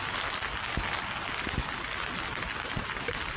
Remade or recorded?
recorded